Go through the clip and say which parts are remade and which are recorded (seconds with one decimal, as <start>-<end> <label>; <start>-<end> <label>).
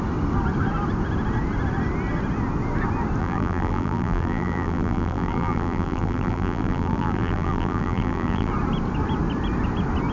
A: 0.0-3.2 recorded; 3.2-8.5 remade; 8.5-10.1 recorded